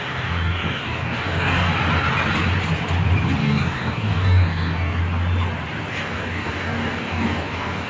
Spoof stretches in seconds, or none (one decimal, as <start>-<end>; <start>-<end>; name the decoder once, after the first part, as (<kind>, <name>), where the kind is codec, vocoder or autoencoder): 0.0-1.7 (codec, DAC); 3.4-5.0; 5.9-7.9